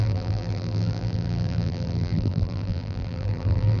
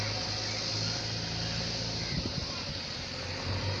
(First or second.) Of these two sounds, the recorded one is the second